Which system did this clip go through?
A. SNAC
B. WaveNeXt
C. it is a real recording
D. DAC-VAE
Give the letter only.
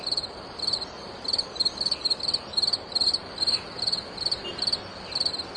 C